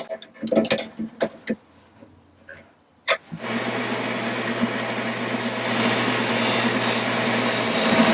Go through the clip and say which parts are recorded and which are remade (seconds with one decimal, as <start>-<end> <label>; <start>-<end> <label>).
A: 0.0-8.1 recorded